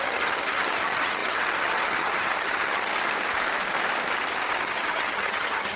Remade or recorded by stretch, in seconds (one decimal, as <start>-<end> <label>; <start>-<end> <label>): 0.0-2.9 remade; 2.9-4.3 recorded; 4.3-5.8 remade